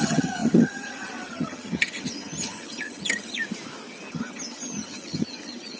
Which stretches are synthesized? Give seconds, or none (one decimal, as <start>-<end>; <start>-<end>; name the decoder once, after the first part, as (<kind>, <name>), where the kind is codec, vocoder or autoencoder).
0.0-3.4 (vocoder, HiFi-GAN); 4.1-5.8